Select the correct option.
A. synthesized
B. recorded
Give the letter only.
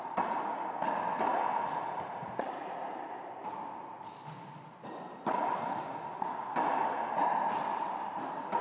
B